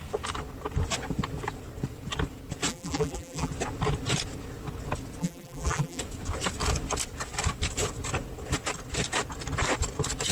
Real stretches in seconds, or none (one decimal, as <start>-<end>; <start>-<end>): 0.0-2.7; 3.5-5.2; 6.0-10.3